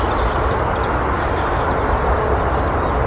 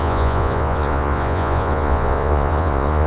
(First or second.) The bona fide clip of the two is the first